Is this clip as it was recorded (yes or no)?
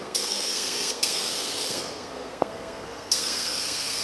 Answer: no